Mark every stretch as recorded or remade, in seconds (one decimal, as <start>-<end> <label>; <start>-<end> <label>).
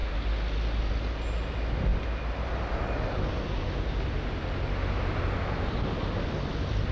0.0-6.9 recorded